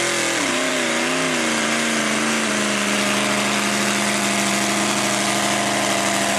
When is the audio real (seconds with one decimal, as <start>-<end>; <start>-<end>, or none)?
0.0-6.4